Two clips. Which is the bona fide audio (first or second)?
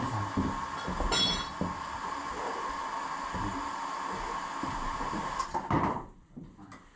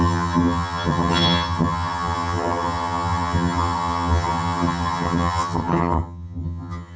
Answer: first